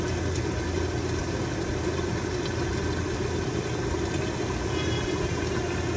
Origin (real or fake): real